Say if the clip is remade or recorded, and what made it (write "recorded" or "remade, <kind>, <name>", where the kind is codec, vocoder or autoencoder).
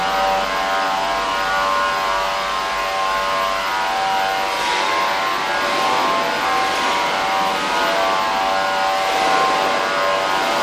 recorded